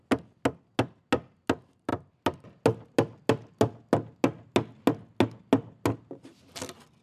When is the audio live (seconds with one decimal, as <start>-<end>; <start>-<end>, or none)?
0.0-7.0